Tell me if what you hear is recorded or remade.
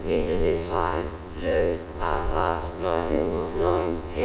remade